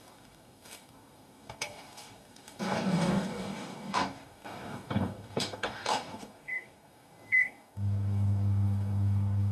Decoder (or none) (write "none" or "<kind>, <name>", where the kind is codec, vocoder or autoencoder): codec, DAC